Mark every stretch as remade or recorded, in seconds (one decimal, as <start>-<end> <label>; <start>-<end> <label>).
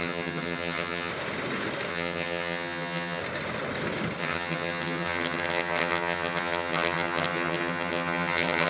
0.0-1.1 remade; 1.1-1.9 recorded; 1.9-3.2 remade; 3.2-4.2 recorded; 4.2-8.7 remade